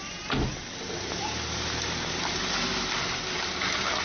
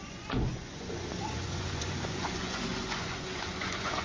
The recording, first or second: first